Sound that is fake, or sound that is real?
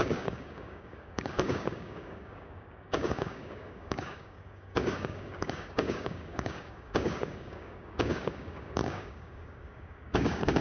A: fake